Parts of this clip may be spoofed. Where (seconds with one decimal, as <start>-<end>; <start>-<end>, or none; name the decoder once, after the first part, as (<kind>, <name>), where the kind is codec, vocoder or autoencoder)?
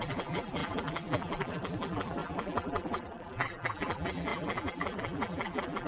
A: 0.0-5.9 (vocoder, BigVGAN v2)